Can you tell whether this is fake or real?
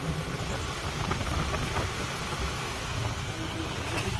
real